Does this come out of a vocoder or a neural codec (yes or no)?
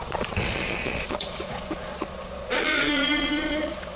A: yes